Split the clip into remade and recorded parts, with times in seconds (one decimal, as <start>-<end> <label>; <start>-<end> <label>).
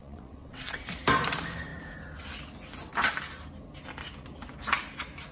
0.0-0.8 remade; 0.8-5.3 recorded